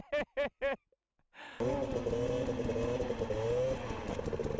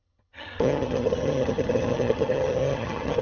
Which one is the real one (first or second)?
first